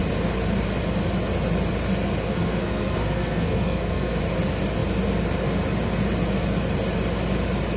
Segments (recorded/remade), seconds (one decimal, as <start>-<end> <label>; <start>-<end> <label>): 0.0-2.3 recorded; 2.3-4.2 remade; 4.2-7.8 recorded